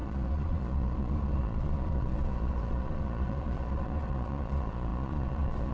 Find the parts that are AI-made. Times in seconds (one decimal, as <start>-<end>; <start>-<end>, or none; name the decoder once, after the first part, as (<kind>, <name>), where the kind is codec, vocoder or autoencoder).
0.0-5.7 (vocoder, Vocos)